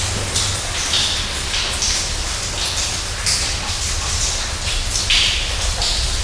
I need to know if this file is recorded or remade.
recorded